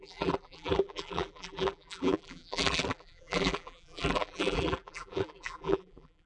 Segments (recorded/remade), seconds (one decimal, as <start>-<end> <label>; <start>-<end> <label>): 0.0-6.3 remade